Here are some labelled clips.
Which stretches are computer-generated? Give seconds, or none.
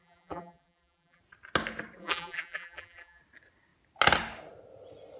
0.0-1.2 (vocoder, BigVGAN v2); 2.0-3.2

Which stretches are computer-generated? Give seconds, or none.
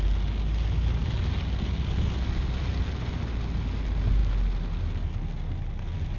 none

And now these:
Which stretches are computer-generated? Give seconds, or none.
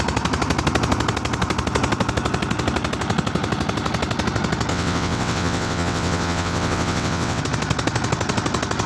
4.7-7.4 (vocoder, WaveNeXt)